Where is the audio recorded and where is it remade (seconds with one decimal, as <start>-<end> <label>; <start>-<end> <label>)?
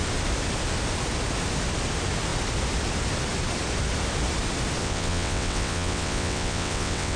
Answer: 0.0-4.8 recorded; 4.8-7.2 remade